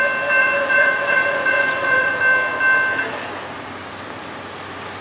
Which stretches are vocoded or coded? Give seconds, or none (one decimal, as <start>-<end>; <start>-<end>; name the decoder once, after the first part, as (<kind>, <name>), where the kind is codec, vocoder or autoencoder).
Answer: 0.4-2.1 (vocoder, Vocos)